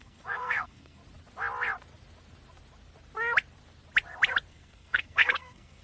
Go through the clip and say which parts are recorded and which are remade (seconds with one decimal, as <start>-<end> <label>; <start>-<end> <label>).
0.0-1.0 remade; 1.0-4.5 recorded; 4.5-5.8 remade